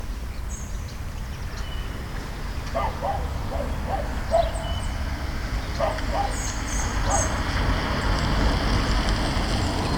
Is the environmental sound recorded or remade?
recorded